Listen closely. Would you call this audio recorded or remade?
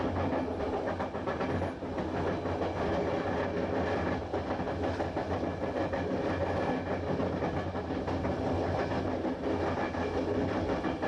recorded